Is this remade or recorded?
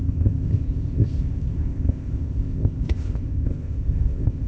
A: remade